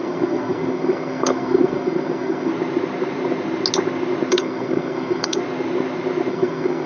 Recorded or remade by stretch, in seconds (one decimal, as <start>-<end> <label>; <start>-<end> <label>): 0.0-2.5 remade; 2.5-4.3 recorded; 4.3-5.4 remade; 5.4-6.3 recorded; 6.3-6.9 remade